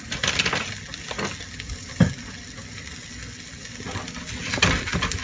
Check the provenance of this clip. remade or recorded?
recorded